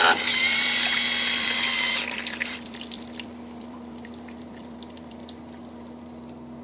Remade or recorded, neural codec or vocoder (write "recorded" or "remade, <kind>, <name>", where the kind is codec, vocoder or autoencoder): remade, vocoder, BigVGAN v2